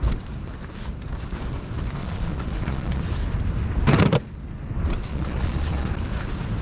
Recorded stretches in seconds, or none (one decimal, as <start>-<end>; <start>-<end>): 0.0-2.0; 3.0-5.1; 5.9-6.6

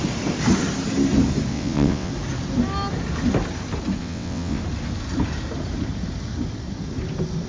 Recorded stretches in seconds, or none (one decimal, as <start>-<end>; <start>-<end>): 0.0-1.5; 2.1-4.0; 4.6-7.5

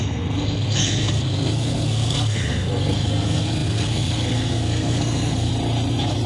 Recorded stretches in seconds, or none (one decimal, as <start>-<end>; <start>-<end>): 5.5-6.3

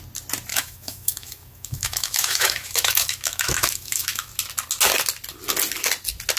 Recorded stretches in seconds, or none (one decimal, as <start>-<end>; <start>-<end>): 0.0-0.5; 4.3-6.4